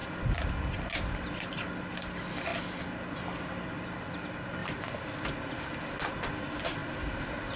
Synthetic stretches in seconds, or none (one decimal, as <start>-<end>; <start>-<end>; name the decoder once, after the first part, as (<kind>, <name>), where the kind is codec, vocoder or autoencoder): none